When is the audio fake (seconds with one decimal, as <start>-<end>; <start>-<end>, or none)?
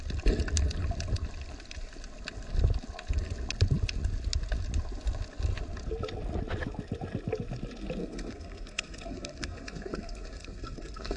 8.0-11.2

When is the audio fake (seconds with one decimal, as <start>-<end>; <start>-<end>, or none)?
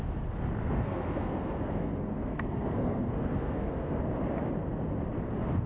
0.6-4.0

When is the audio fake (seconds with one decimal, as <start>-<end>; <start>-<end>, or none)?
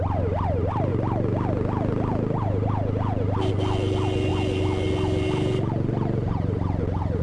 none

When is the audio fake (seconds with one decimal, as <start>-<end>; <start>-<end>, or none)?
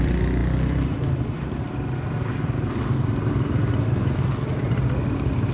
0.0-5.5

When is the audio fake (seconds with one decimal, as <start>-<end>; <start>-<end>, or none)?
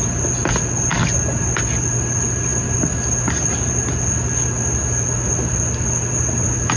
none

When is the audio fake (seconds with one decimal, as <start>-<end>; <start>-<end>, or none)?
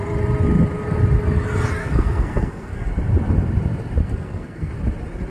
1.8-2.9; 4.0-4.7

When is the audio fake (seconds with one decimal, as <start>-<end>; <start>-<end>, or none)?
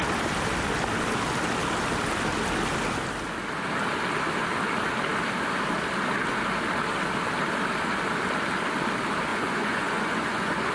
9.3-10.7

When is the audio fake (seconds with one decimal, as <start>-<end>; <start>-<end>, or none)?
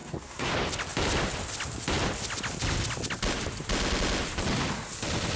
0.0-0.5